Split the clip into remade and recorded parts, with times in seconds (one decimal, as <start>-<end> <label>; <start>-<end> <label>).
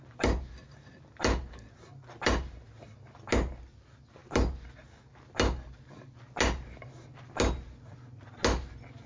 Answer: 0.0-9.1 recorded